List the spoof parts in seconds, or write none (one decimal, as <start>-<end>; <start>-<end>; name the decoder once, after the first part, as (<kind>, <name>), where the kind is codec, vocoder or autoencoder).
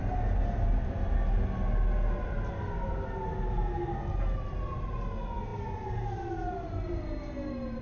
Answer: none